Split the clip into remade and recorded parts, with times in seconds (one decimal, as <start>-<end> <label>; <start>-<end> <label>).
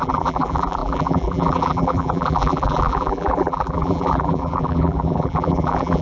0.0-6.0 remade